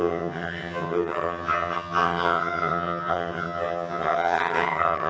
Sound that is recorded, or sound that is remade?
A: remade